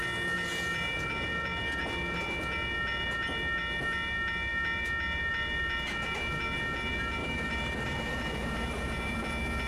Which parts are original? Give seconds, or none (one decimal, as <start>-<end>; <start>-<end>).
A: 0.0-7.2; 9.2-9.7